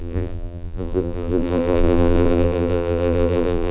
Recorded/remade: remade